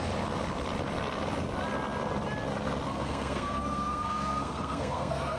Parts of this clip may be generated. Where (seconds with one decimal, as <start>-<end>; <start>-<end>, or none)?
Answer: 2.9-5.4